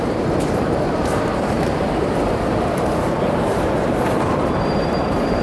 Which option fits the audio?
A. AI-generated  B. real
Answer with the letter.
A